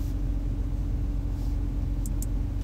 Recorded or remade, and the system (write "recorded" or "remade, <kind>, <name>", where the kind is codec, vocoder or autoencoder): recorded